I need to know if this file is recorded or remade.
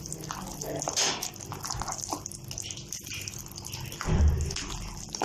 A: recorded